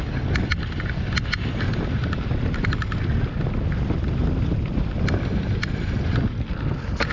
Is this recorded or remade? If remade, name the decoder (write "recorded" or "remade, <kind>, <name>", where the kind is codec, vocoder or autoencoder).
recorded